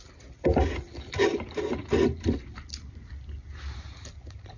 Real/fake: real